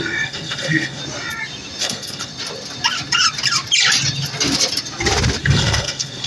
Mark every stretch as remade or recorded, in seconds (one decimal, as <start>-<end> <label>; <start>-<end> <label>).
0.0-1.0 remade; 1.0-1.8 recorded; 1.8-2.3 remade; 2.3-5.4 recorded; 5.4-6.3 remade